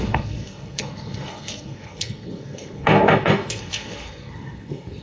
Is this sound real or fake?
fake